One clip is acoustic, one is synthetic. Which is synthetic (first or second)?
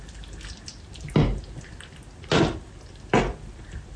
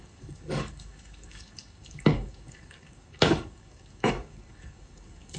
second